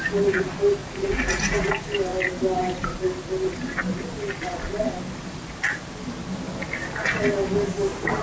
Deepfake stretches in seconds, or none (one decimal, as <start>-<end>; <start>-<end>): 0.8-1.7